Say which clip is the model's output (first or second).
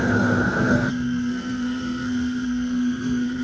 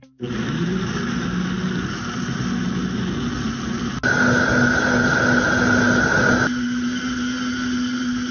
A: first